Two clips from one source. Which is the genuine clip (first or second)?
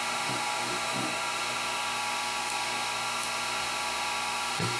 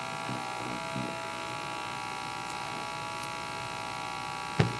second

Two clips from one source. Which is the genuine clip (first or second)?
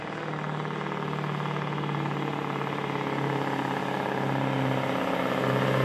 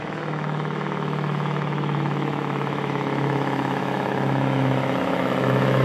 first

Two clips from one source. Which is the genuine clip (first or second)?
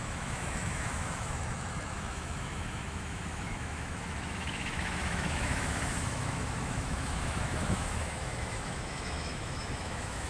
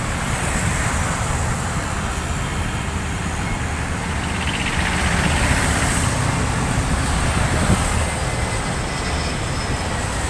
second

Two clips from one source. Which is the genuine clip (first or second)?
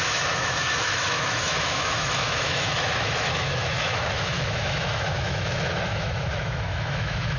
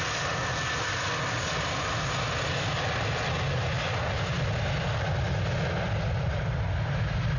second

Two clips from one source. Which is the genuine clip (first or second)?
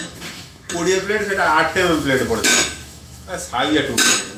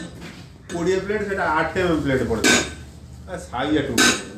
second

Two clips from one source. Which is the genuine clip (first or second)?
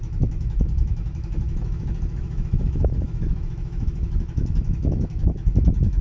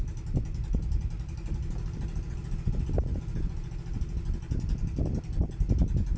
second